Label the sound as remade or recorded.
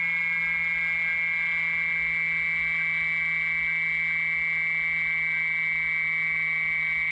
recorded